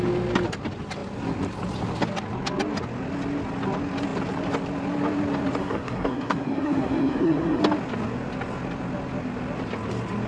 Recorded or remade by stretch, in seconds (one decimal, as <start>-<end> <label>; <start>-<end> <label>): 0.0-5.6 recorded; 5.6-7.6 remade; 7.6-10.3 recorded